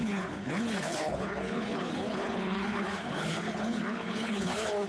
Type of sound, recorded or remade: remade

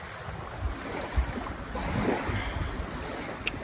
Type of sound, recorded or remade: recorded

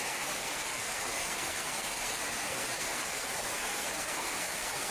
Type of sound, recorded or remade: remade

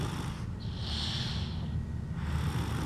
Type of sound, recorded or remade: recorded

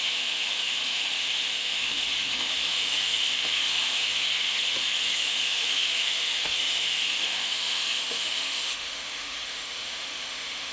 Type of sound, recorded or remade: remade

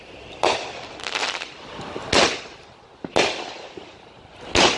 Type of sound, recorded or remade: recorded